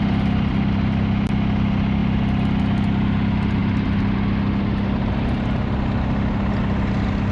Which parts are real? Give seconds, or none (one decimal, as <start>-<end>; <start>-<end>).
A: 0.0-7.3